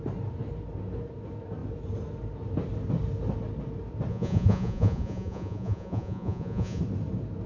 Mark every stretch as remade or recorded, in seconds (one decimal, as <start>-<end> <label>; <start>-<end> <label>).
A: 0.0-4.1 recorded; 4.1-6.8 remade; 6.8-7.5 recorded

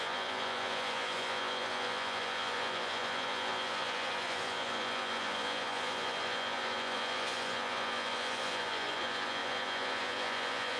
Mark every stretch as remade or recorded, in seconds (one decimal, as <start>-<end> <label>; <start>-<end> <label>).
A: 0.0-10.8 remade

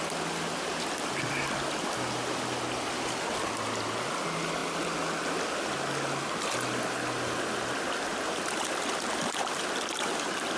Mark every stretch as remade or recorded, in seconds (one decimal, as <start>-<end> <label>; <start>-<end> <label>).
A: 0.0-10.6 recorded

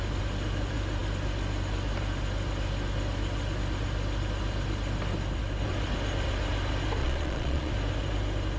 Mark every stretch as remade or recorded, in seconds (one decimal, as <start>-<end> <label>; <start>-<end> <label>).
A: 0.0-7.0 recorded; 7.0-7.7 remade; 7.7-8.6 recorded

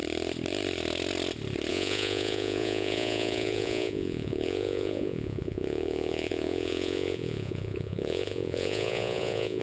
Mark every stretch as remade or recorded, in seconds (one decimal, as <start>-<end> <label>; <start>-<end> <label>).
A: 0.0-1.7 recorded; 1.7-9.6 remade